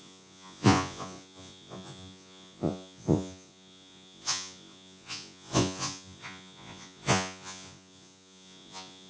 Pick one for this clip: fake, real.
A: fake